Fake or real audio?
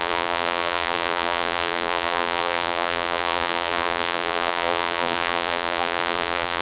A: fake